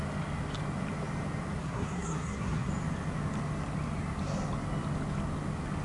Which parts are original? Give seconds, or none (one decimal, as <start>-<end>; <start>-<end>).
0.0-1.6; 2.7-5.8